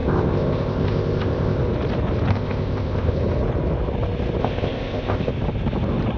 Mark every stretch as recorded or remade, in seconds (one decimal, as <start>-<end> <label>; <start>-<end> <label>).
0.0-1.6 remade; 1.6-2.3 recorded; 2.3-3.2 remade; 3.2-4.4 recorded; 4.4-5.3 remade; 5.3-6.2 recorded